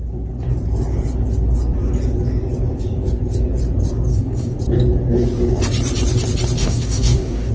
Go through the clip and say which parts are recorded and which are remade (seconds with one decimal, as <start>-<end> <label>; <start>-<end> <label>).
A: 0.0-4.1 recorded; 4.1-4.6 remade; 4.6-6.6 recorded; 6.6-7.5 remade

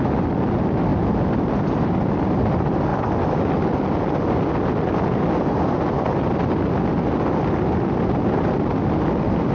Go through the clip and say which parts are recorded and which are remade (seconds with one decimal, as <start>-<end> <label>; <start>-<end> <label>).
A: 0.0-9.5 recorded

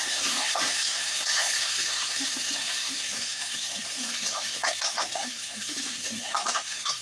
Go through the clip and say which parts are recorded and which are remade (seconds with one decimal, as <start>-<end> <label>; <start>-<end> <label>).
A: 0.0-7.0 remade

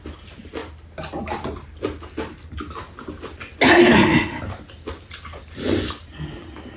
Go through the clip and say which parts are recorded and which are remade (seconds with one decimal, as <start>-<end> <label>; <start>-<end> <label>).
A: 0.0-6.8 recorded

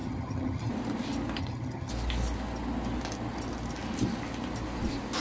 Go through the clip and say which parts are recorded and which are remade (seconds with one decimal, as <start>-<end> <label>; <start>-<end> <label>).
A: 0.0-0.7 remade; 0.7-1.4 recorded; 1.4-1.9 remade; 1.9-5.2 recorded

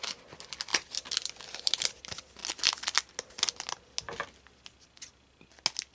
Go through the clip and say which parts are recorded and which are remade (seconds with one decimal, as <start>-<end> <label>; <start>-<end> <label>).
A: 0.0-0.7 recorded; 0.7-2.0 remade; 2.0-5.9 recorded

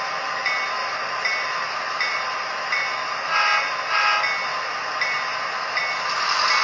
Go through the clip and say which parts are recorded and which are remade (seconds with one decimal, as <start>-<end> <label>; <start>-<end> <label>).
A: 0.0-0.8 recorded; 0.8-2.5 remade; 2.5-4.5 recorded; 4.5-5.8 remade; 5.8-6.6 recorded

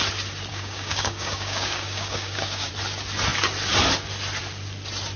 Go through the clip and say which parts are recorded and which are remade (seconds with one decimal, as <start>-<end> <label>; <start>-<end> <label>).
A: 0.0-0.5 recorded; 0.5-2.7 remade; 2.7-5.2 recorded